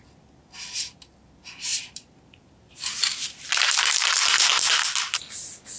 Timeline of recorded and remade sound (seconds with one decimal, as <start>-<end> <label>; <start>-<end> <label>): 0.0-1.7 recorded; 1.7-5.2 remade; 5.2-5.8 recorded